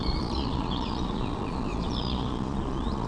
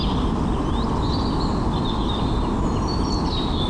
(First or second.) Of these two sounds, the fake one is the first